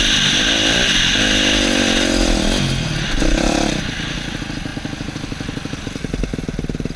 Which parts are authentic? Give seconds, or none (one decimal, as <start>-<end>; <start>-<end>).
0.0-7.0

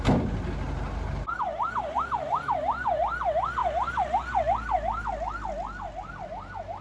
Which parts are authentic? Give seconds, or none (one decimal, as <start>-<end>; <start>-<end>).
0.0-6.8

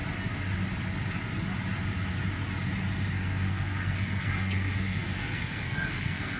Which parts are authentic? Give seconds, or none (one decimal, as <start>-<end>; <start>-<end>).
0.0-3.1

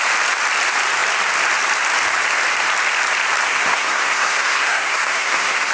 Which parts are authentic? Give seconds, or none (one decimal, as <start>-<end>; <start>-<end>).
0.0-3.4

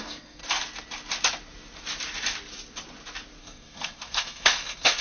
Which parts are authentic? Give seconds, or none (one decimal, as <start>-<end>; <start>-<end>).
0.4-3.4